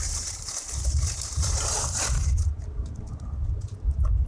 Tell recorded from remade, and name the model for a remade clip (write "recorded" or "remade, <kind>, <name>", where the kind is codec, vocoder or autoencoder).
remade, vocoder, BigVGAN v2